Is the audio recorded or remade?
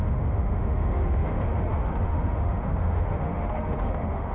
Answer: remade